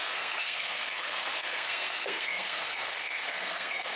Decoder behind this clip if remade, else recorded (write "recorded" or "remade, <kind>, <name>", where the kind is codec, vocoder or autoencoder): remade, codec, SNAC